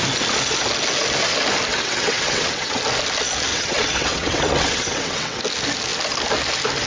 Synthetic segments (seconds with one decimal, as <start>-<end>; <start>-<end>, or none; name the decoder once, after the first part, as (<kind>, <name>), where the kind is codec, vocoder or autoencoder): 1.7-2.8 (vocoder, WaveNeXt); 3.5-5.4